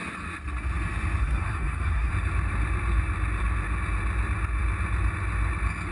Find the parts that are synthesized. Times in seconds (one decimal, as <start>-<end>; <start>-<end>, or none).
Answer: 1.2-2.1